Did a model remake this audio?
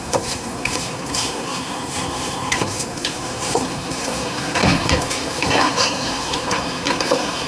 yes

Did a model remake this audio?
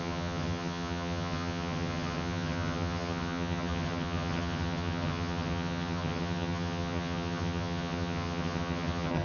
yes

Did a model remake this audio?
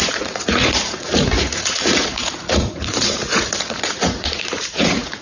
yes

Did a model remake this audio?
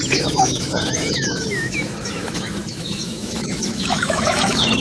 yes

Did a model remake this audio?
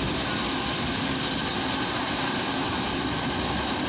no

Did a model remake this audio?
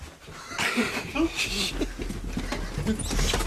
no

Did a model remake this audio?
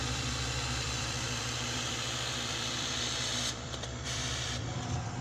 yes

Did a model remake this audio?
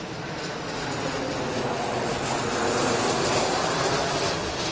no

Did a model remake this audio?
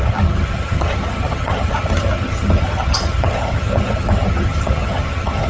yes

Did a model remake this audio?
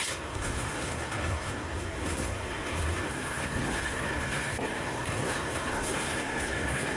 yes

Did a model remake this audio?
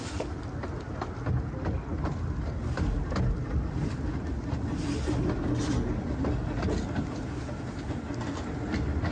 no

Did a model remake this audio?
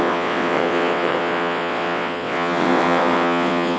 yes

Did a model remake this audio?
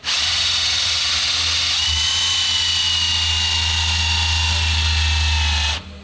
no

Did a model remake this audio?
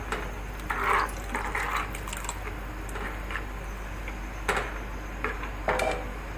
no